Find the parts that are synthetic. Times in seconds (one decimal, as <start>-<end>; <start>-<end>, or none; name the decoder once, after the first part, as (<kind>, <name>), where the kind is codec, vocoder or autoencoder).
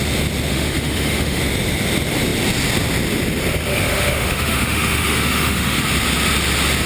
0.5-1.4 (autoencoder, DAC-VAE); 3.7-5.8